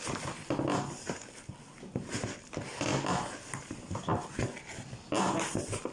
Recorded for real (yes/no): yes